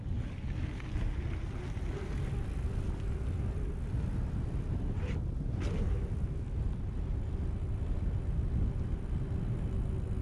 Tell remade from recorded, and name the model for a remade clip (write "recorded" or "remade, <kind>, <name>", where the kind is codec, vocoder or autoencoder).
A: recorded